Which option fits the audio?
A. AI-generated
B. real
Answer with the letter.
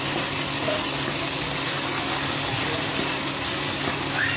B